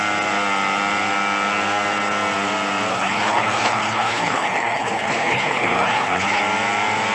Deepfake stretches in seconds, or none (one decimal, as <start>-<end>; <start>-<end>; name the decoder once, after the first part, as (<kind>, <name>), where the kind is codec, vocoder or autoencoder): 2.9-6.4 (codec, HILCodec)